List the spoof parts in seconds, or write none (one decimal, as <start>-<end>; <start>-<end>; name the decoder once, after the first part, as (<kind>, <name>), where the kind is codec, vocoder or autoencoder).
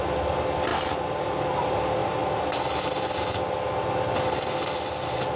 none